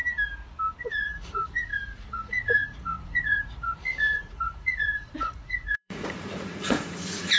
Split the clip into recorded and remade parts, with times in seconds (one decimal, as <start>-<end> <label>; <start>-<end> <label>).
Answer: 0.0-0.8 recorded; 0.8-7.4 remade